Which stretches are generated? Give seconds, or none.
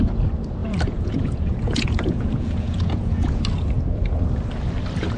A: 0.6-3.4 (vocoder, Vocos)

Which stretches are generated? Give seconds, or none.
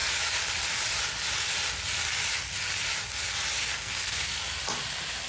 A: 3.6-4.4 (codec, SNAC)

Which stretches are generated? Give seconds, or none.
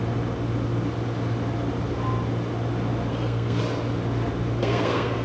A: 3.1-3.6 (codec, SNAC); 4.6-5.2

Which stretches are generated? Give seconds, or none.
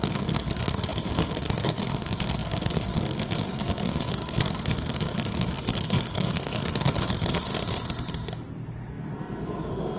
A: 0.0-7.5 (codec, SNAC); 8.9-10.0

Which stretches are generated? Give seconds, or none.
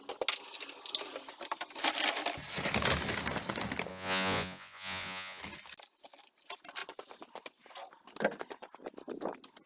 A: 3.9-5.4 (vocoder, Vocos)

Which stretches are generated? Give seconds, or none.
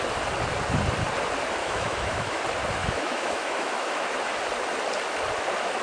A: 1.6-2.4 (autoencoder, DAC-VAE); 2.8-4.0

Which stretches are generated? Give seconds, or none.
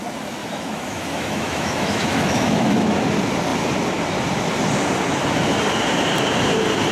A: 0.4-3.0 (autoencoder, DAC-VAE)